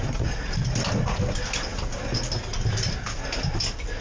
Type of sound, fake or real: real